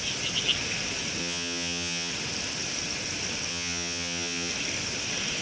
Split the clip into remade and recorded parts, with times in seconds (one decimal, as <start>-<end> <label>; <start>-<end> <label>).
0.0-1.2 recorded; 1.2-2.1 remade; 2.1-3.5 recorded; 3.5-4.5 remade; 4.5-5.4 recorded